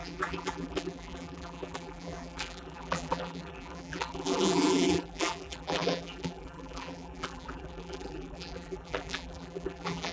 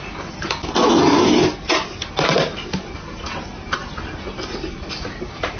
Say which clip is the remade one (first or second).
first